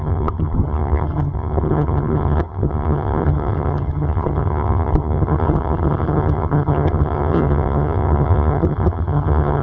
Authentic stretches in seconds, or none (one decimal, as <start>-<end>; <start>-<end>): none